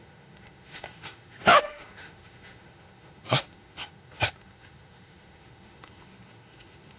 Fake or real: fake